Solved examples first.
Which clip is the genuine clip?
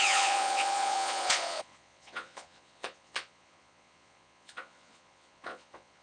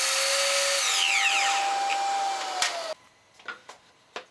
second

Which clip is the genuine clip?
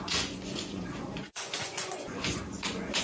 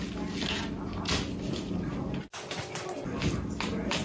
second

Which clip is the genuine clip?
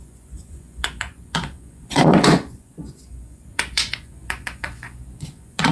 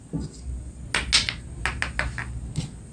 second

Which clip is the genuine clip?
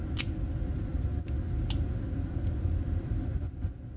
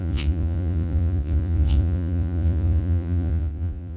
first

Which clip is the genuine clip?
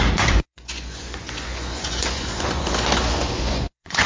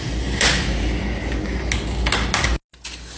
second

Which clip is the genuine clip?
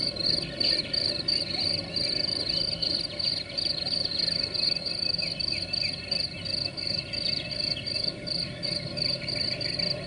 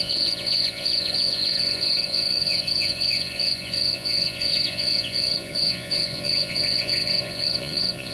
first